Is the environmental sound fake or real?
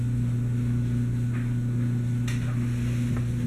real